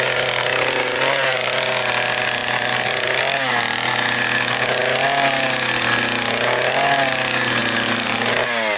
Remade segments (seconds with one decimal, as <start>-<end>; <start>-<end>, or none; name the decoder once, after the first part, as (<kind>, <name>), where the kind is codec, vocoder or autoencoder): 2.4-3.2 (vocoder, BigVGAN v2); 7.6-8.4